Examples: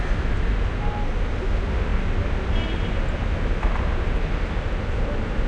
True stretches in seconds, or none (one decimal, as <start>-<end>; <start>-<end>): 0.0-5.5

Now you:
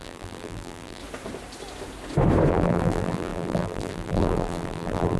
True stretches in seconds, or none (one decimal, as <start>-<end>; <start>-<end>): 1.0-2.5

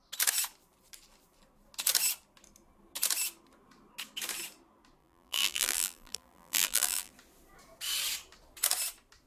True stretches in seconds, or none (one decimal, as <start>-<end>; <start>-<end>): 0.0-5.0; 7.1-9.3

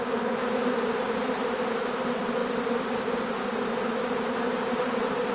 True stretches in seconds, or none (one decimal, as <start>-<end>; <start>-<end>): 0.0-4.4

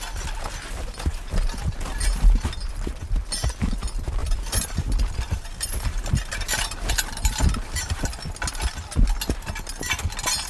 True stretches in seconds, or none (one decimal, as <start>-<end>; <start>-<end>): 0.0-4.2; 6.3-10.5